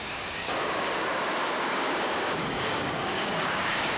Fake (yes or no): yes